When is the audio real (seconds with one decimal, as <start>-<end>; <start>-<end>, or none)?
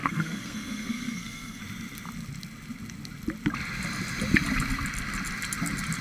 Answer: 1.6-6.0